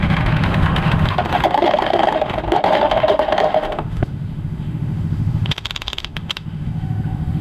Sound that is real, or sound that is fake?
fake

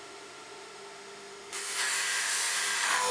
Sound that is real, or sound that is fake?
fake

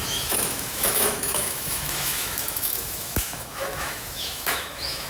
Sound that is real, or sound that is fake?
fake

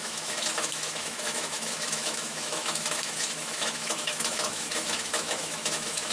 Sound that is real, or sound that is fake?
fake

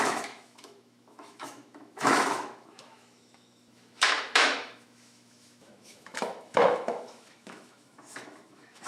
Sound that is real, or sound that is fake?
fake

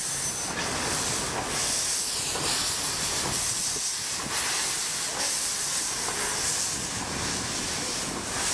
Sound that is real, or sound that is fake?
real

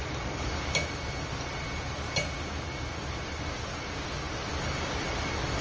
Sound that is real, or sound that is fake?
real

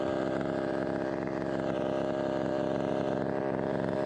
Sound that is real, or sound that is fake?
real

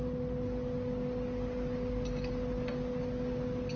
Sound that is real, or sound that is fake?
real